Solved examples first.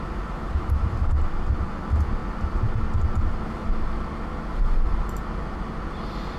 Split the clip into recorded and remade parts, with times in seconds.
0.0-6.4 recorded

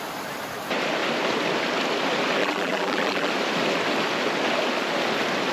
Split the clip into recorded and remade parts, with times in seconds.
0.0-2.4 recorded; 2.4-3.3 remade; 3.3-5.5 recorded